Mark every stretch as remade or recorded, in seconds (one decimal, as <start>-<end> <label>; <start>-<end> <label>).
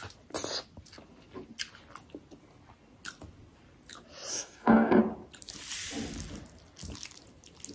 0.0-4.3 recorded; 4.3-5.0 remade; 5.0-7.7 recorded